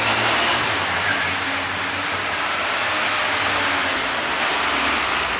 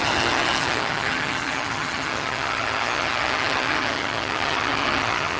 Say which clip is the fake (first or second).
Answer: second